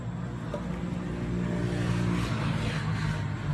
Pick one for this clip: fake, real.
real